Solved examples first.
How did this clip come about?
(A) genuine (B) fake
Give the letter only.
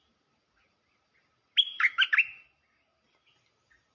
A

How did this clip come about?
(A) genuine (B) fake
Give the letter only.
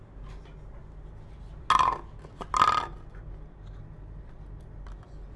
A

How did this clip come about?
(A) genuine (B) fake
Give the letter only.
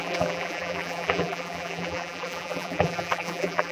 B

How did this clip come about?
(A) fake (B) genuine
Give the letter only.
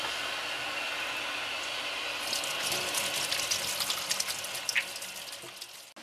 B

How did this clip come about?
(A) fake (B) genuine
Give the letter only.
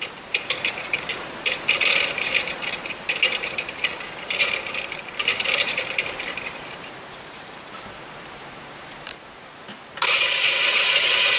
A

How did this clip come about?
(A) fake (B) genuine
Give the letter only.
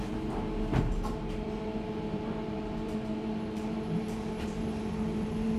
A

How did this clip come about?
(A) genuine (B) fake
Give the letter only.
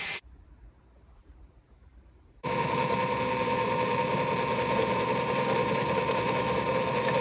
B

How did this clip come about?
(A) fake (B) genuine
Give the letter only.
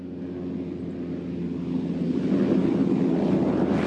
B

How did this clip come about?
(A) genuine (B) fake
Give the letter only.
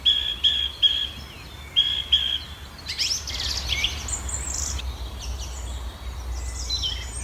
A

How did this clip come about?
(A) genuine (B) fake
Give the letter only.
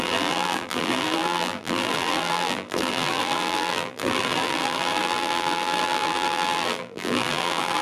B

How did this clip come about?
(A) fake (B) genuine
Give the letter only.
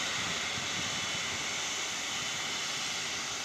B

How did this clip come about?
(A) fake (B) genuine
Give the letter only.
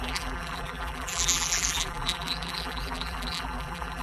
A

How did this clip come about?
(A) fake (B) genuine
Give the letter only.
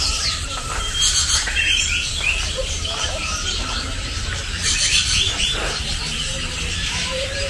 A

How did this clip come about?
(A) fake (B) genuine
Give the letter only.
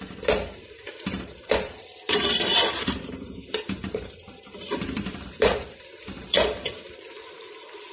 A